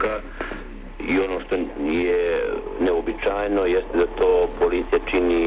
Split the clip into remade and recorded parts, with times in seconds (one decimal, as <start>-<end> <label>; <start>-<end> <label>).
0.0-4.3 recorded; 4.3-4.9 remade; 4.9-5.5 recorded